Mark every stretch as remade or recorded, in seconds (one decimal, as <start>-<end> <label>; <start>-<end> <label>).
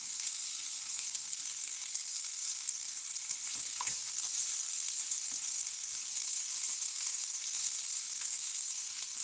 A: 0.0-3.0 remade; 3.0-3.6 recorded; 3.6-9.2 remade